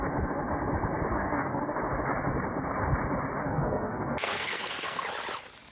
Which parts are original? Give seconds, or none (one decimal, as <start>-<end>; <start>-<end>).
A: 0.0-1.1; 1.6-3.4; 5.0-5.7